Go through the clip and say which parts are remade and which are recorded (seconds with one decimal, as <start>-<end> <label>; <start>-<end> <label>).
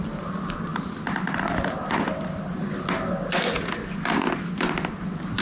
0.0-5.4 recorded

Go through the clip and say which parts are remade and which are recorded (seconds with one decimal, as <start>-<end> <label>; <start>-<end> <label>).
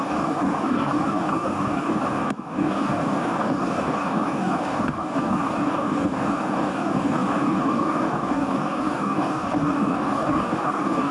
0.0-11.1 remade